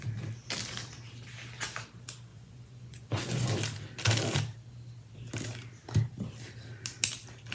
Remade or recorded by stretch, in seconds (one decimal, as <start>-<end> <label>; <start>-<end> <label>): 0.0-2.3 recorded; 2.3-3.5 remade; 3.5-7.5 recorded